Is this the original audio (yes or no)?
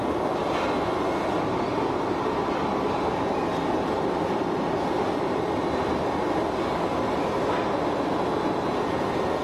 yes